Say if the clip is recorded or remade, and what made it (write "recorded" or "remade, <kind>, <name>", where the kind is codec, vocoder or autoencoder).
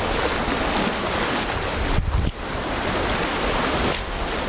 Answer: recorded